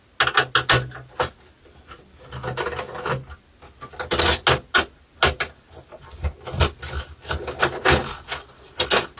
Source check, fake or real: real